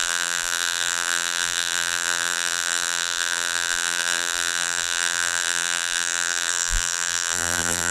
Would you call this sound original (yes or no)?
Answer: no